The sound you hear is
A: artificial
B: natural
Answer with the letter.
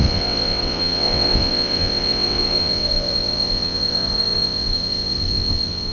A